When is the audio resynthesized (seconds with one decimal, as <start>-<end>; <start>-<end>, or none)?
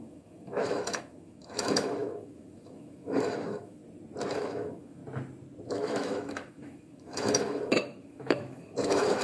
0.0-3.8; 4.3-5.0; 5.7-9.2